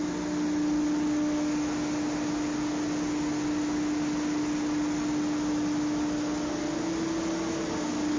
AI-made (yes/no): no